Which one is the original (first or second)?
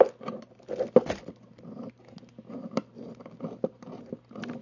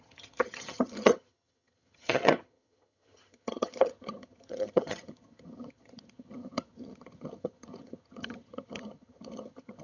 first